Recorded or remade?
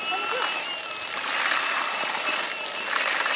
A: recorded